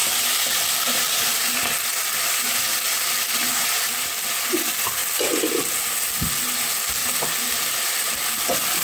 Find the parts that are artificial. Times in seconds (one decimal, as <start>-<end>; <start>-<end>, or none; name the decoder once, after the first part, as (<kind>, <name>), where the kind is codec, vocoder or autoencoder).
0.0-1.6 (vocoder, BigVGAN v2); 3.5-4.1